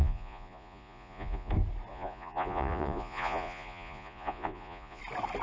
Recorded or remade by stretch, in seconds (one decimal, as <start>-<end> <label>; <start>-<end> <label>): 0.0-1.5 remade; 1.5-1.9 recorded; 1.9-5.0 remade; 5.0-5.4 recorded